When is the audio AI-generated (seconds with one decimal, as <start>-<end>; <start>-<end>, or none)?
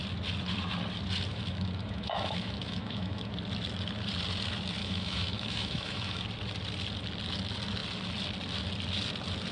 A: 1.3-3.3; 4.8-6.2